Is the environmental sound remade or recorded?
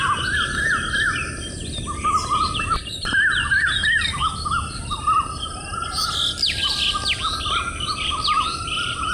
recorded